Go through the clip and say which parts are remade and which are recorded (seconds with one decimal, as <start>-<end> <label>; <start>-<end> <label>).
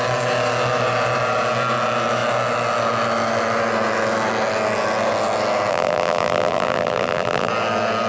0.0-5.7 recorded; 5.7-7.5 remade; 7.5-8.1 recorded